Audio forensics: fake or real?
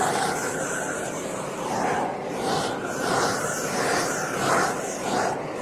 fake